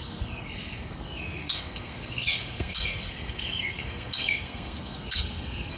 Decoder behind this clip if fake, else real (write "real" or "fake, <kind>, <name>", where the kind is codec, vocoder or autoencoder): fake, codec, SNAC